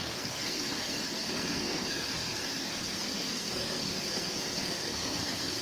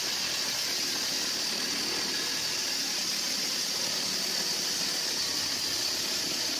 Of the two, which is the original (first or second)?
second